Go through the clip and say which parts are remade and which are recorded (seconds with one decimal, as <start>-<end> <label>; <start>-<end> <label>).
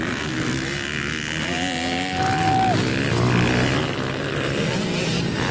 0.0-5.5 recorded